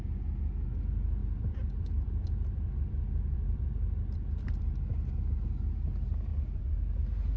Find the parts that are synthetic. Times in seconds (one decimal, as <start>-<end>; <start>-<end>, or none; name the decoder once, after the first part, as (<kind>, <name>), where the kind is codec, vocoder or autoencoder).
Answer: 1.2-4.8 (vocoder, BigVGAN v2); 6.3-7.0